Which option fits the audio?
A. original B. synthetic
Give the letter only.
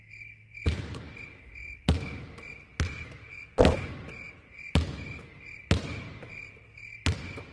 A